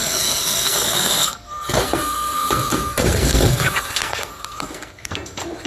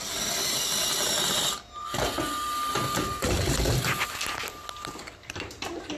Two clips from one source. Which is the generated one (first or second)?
first